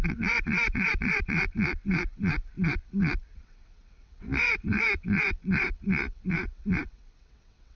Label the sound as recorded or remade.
remade